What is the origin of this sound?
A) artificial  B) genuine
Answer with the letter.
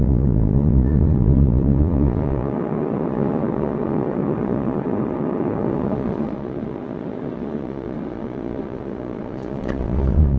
A